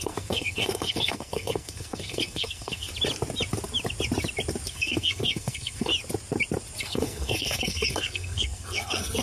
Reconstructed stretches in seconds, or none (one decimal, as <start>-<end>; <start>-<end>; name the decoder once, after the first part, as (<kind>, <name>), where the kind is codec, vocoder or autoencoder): 0.0-2.9 (codec, SNAC); 4.7-5.9; 6.8-9.2